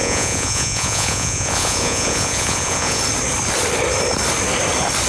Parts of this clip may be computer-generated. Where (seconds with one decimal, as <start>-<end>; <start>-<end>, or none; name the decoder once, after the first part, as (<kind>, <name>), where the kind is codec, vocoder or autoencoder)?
0.0-3.0 (vocoder, Vocos)